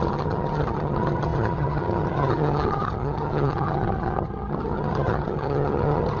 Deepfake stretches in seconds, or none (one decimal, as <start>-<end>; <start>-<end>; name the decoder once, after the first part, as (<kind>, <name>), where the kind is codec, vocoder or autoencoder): 0.0-6.2 (vocoder, HiFi-GAN)